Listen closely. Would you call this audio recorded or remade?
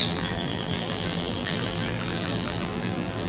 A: remade